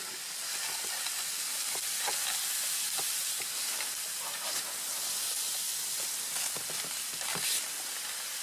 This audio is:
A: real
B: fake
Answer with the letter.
A